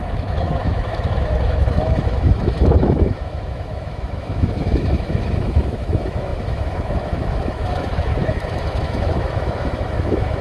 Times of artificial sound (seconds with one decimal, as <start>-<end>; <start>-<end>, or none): 0.0-10.4